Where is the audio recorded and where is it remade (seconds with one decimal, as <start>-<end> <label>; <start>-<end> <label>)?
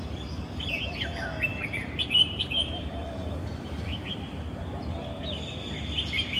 0.0-1.5 recorded; 1.5-5.2 remade; 5.2-6.4 recorded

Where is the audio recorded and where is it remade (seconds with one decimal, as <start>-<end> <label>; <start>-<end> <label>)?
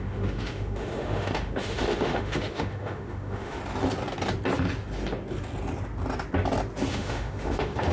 0.0-3.6 remade; 3.6-6.9 recorded; 6.9-7.9 remade